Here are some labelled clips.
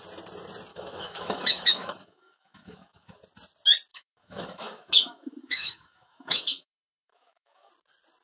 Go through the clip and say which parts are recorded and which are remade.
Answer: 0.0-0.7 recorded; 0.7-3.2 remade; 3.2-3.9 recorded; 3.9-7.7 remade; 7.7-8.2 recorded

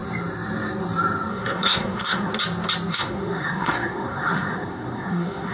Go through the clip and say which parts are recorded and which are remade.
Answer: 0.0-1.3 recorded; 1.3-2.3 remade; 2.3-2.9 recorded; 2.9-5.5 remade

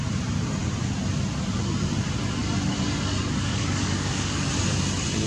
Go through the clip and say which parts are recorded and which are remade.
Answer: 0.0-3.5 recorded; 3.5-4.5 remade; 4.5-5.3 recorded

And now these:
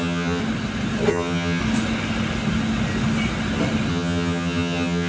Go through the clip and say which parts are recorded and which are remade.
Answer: 0.0-0.4 remade; 0.4-1.1 recorded; 1.1-1.6 remade; 1.6-3.9 recorded; 3.9-5.1 remade

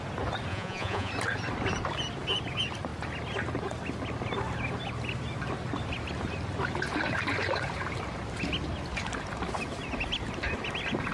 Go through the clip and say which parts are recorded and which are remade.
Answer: 0.0-0.5 recorded; 0.5-1.1 remade; 1.1-11.1 recorded

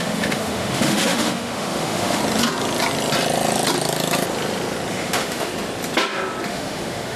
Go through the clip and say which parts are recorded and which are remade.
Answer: 0.0-2.2 remade; 2.2-4.9 recorded; 4.9-5.5 remade; 5.5-6.5 recorded; 6.5-7.2 remade

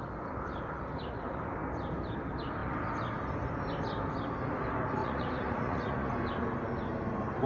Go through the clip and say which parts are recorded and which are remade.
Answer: 0.0-5.0 recorded; 5.0-6.1 remade; 6.1-7.5 recorded

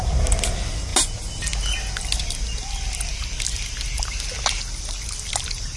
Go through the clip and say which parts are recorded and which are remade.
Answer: 0.0-5.8 recorded